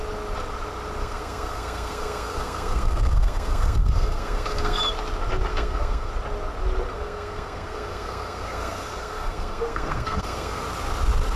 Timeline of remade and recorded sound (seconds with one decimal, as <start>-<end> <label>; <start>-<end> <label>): 0.0-1.0 recorded; 1.0-4.8 remade; 4.8-5.5 recorded; 5.5-6.1 remade; 6.1-6.9 recorded; 6.9-10.6 remade; 10.6-11.4 recorded

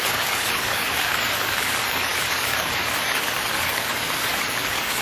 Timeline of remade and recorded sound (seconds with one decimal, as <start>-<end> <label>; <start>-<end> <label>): 0.0-5.0 remade

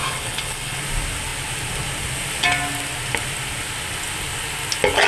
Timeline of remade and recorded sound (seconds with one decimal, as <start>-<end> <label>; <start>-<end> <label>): 0.0-0.8 remade; 0.8-5.1 recorded